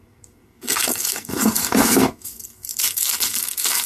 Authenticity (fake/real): fake